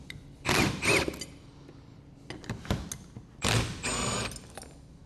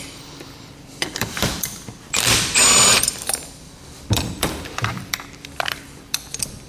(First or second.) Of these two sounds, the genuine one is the first